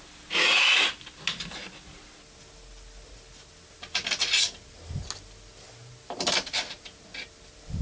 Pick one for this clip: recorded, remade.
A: recorded